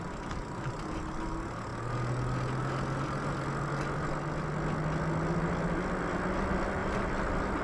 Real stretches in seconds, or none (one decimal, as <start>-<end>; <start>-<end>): 0.0-7.6